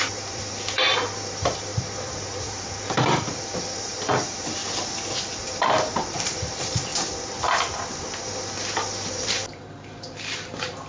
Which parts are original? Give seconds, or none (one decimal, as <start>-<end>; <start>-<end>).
4.6-5.4; 6.9-9.1